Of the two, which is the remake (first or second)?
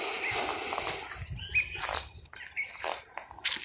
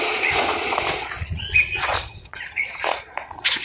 second